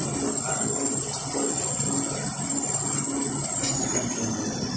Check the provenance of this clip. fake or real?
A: real